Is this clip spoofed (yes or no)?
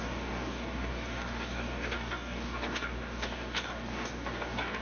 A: yes